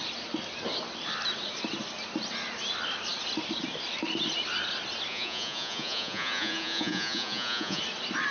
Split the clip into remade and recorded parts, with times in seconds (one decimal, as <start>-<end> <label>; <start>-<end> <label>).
0.0-5.1 recorded; 5.1-7.8 remade; 7.8-8.3 recorded